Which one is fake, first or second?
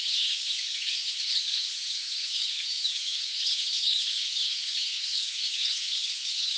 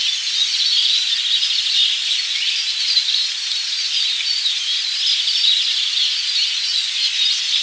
first